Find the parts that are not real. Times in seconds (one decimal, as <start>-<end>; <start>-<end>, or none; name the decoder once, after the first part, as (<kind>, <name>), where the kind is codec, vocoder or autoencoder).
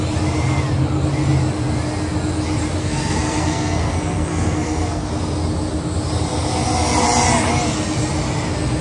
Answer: 2.8-5.1 (codec, SNAC)